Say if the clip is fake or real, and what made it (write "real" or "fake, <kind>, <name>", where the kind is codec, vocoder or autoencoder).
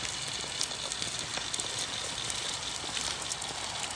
real